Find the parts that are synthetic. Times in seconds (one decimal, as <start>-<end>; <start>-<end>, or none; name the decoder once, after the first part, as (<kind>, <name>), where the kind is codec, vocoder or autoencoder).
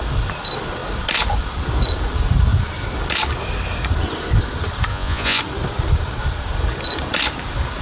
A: 4.9-5.4 (vocoder, Vocos)